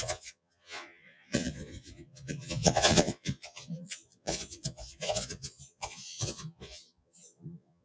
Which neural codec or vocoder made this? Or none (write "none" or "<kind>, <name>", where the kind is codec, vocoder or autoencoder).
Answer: vocoder, Vocos